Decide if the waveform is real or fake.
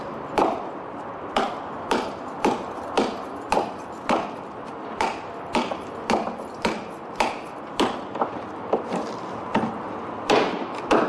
real